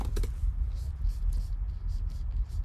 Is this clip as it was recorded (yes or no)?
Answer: yes